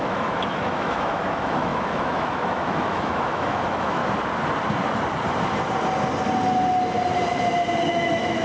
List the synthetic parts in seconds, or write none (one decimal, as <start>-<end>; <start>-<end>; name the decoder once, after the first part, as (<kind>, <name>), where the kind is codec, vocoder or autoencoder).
0.0-4.0 (autoencoder, DAC-VAE); 7.9-8.4